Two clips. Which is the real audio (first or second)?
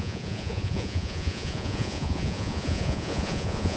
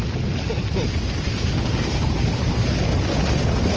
second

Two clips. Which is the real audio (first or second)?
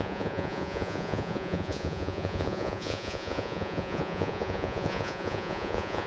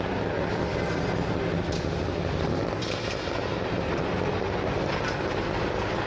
second